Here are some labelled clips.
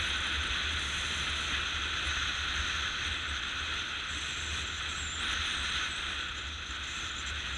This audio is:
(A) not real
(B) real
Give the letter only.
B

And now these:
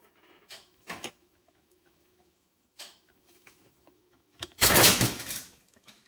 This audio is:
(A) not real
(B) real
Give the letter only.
A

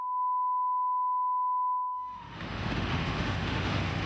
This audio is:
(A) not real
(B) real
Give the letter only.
A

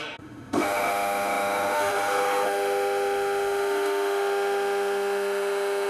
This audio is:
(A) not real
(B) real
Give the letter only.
A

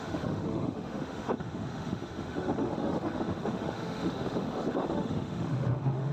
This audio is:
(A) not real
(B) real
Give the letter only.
A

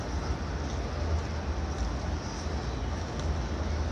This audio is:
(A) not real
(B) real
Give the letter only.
B